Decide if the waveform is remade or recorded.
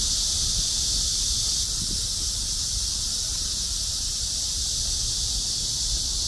recorded